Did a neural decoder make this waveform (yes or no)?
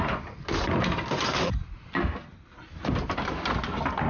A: no